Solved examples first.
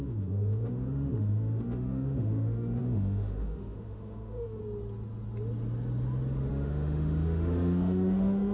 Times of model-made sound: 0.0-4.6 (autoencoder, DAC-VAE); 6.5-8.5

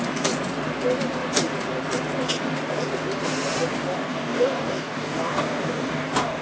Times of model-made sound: 4.1-6.4 (codec, DAC)

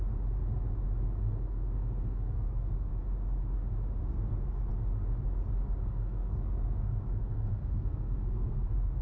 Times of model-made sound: 1.2-2.9 (codec, SNAC); 4.0-4.7; 5.9-9.0